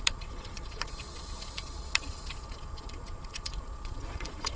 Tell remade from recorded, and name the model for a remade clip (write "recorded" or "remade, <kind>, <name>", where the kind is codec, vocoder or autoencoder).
remade, vocoder, Vocos